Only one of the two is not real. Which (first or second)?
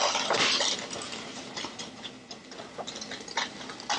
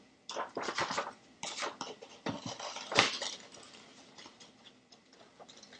second